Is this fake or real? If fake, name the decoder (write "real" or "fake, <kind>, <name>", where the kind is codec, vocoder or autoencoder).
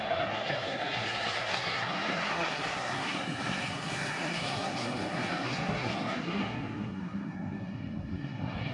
fake, codec, SNAC